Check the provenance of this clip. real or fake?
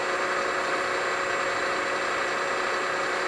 real